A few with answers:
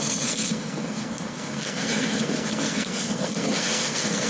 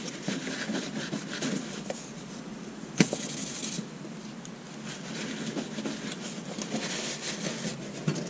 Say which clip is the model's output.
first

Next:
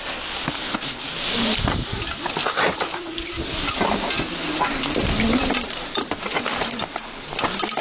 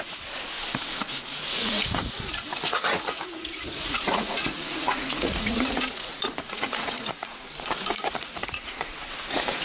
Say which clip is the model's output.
second